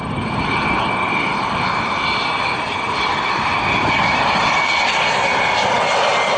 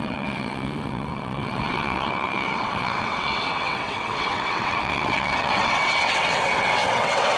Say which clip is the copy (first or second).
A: second